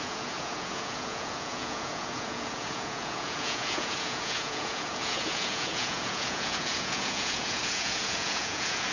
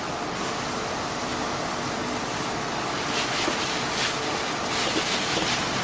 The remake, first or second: first